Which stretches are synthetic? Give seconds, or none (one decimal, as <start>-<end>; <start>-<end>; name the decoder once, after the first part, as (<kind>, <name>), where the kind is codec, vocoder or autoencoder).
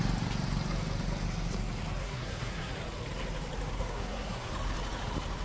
2.0-2.7 (codec, SNAC); 3.7-4.5